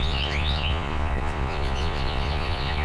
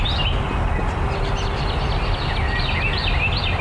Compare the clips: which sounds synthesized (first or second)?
first